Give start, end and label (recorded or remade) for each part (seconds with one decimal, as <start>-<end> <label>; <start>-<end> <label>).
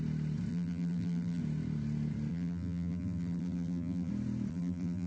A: 0.0-0.5 recorded; 0.5-1.4 remade; 1.4-2.3 recorded; 2.3-4.1 remade; 4.1-4.5 recorded; 4.5-5.1 remade